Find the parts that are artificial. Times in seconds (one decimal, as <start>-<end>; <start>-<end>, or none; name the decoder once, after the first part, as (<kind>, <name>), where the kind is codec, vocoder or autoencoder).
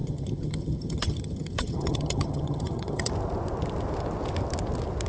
0.0-3.1 (vocoder, HiFi-GAN)